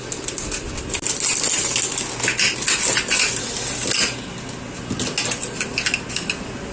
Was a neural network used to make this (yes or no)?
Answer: no